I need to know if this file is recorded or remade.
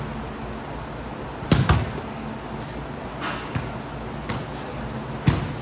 recorded